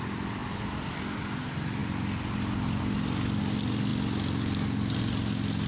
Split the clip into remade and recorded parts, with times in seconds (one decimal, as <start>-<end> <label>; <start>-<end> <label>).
0.0-5.7 recorded